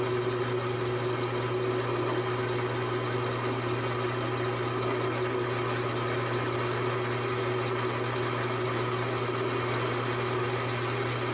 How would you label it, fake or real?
real